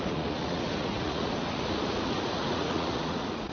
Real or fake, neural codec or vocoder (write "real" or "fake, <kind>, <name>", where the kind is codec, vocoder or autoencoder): fake, vocoder, Vocos